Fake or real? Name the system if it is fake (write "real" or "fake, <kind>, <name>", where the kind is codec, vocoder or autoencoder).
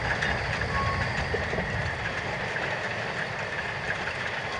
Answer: real